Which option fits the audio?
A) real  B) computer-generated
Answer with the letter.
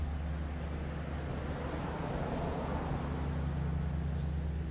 A